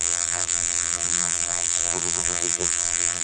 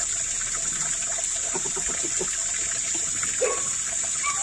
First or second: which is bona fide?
second